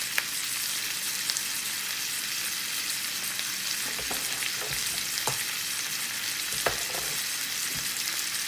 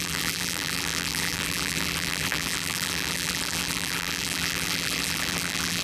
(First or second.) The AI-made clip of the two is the second